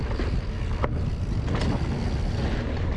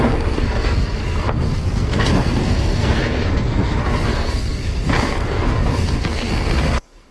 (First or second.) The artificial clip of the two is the second